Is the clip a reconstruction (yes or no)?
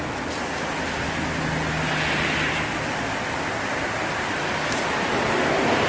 no